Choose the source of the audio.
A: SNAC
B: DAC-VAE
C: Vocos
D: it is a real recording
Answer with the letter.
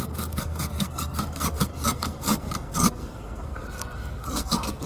A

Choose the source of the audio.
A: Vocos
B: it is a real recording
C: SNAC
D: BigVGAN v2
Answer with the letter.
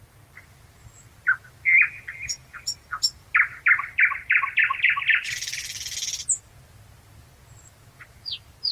B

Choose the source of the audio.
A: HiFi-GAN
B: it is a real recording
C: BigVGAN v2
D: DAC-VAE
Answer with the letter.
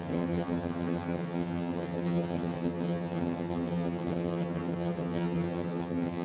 A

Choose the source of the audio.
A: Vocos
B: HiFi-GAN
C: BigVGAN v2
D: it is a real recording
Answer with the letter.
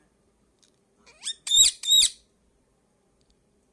C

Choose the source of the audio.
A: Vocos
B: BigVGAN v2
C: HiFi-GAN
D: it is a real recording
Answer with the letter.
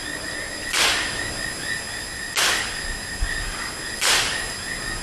D